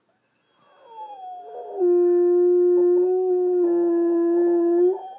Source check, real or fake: real